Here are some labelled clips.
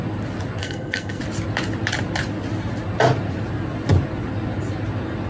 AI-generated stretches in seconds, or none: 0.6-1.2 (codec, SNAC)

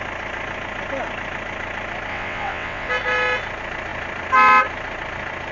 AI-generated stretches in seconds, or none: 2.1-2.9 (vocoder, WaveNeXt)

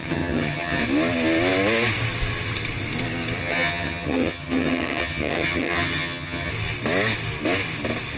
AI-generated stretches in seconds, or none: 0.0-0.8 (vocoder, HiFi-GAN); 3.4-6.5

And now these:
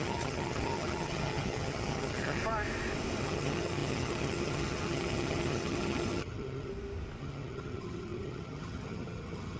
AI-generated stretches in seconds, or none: 0.0-2.4 (vocoder, HiFi-GAN); 3.2-6.7; 7.2-9.6

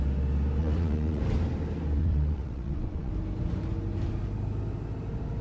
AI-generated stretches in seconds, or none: 0.6-1.2 (vocoder, WaveNeXt); 2.0-3.1

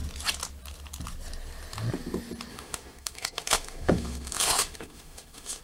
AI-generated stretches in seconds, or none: 2.5-5.6 (autoencoder, DAC-VAE)